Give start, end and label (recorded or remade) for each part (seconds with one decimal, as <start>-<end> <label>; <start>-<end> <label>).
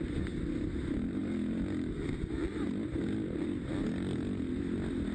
0.0-5.1 recorded